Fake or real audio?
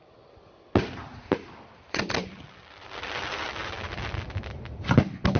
real